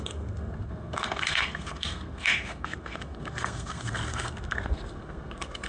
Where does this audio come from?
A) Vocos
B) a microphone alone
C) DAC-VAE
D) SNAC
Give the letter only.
D